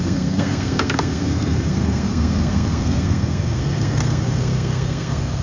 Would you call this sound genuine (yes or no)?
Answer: no